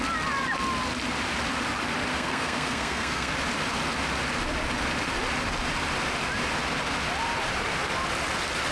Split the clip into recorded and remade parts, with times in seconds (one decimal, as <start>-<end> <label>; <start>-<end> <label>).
0.0-2.1 recorded; 2.1-3.3 remade; 3.3-8.7 recorded